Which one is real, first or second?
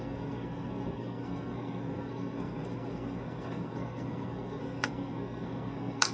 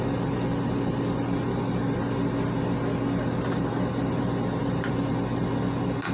second